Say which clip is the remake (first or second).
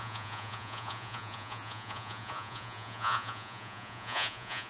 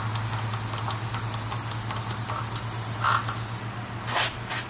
first